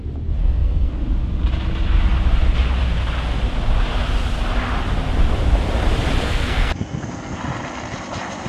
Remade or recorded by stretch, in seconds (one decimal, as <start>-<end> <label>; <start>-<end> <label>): 0.0-0.4 recorded; 0.4-1.0 remade; 1.0-6.2 recorded; 6.2-7.4 remade; 7.4-8.5 recorded